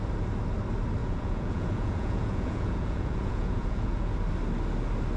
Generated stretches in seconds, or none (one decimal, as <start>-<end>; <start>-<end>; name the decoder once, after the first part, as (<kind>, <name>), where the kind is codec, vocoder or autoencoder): 1.0-4.1 (vocoder, Vocos)